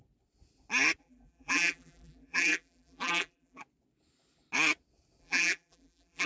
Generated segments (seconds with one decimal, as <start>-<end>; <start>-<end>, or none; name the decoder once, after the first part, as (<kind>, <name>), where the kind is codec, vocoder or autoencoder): 1.0-3.6 (vocoder, BigVGAN v2); 5.2-6.3